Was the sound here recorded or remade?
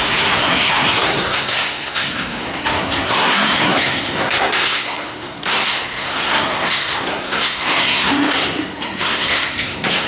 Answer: remade